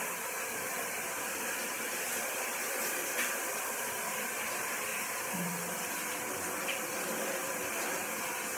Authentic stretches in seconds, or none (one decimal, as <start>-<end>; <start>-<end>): 0.0-1.3; 4.3-8.6